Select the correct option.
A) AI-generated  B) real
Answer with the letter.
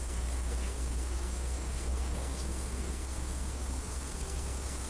A